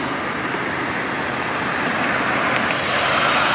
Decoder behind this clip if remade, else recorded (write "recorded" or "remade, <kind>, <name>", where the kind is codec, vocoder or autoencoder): recorded